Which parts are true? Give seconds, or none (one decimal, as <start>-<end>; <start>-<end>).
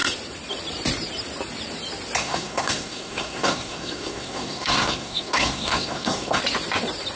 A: 0.0-2.2; 6.4-7.2